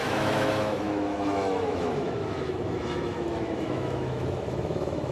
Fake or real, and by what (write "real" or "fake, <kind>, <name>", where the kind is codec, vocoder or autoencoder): fake, autoencoder, DAC-VAE